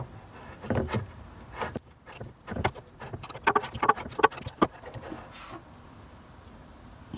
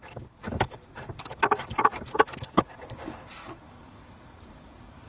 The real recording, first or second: first